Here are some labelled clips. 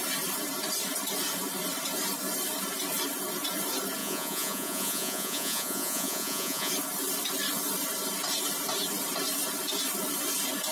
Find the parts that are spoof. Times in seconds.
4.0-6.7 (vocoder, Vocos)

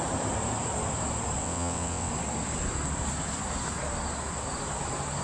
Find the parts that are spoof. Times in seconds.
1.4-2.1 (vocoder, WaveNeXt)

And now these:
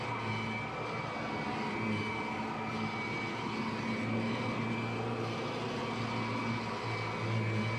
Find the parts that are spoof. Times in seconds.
none

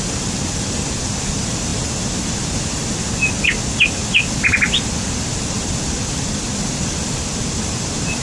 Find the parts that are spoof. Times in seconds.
none

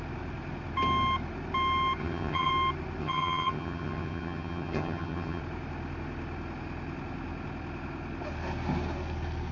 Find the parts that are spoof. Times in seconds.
2.0-2.5 (vocoder, HiFi-GAN); 3.0-5.4

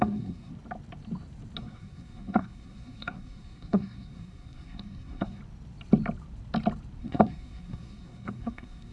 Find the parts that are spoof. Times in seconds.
0.0-0.5 (codec, SNAC); 1.6-5.4; 7.0-8.9

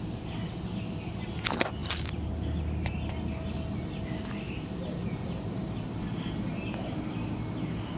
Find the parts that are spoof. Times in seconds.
none